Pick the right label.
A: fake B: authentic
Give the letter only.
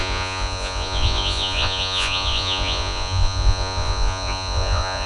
A